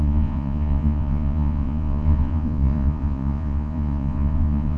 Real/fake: fake